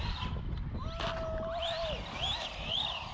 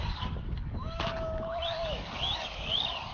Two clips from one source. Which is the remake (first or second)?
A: second